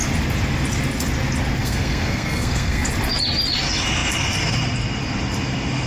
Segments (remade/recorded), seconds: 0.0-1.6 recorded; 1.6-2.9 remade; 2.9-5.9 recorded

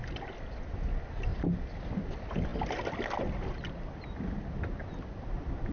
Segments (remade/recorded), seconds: 0.0-5.7 recorded

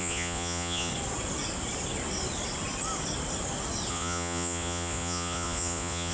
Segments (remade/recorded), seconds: 0.0-0.9 remade; 0.9-3.9 recorded; 3.9-6.1 remade

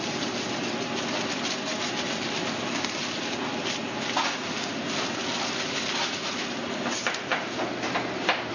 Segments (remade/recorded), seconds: 0.0-8.5 recorded